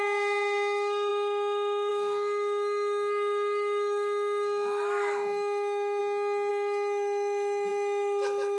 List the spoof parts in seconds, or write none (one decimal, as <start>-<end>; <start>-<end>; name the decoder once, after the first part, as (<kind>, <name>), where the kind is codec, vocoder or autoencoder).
0.0-6.0 (autoencoder, DAC-VAE); 6.5-8.6